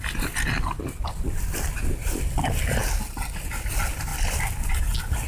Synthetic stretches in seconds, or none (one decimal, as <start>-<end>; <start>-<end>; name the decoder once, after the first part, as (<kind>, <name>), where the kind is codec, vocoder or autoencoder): none

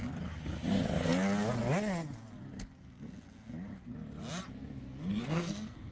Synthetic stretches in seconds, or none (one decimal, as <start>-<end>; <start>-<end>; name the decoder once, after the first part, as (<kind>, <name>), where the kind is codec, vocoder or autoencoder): 5.1-5.9 (codec, SNAC)

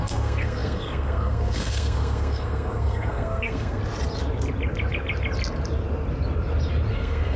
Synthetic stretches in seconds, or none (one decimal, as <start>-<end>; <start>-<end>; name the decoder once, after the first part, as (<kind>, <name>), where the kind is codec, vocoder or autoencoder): 0.0-3.8 (codec, SNAC); 6.9-7.4

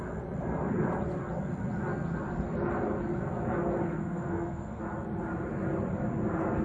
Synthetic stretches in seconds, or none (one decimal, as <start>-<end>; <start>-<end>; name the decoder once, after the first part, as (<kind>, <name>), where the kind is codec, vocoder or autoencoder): 4.0-4.8 (codec, SNAC)

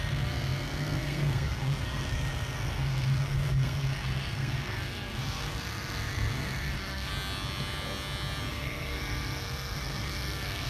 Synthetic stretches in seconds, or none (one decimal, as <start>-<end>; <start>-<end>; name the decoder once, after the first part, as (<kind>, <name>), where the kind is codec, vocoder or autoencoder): 0.0-7.1 (codec, SNAC); 8.5-10.7

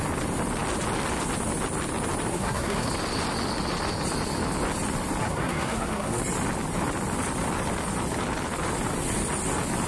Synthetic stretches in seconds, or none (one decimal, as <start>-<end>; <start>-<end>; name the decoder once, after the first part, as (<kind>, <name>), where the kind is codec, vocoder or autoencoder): 2.3-2.9 (codec, SNAC); 5.2-6.2